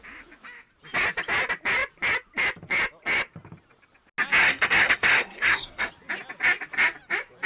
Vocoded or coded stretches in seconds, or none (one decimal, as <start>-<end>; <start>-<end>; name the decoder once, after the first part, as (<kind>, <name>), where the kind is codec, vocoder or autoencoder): 4.4-5.9 (codec, SNAC)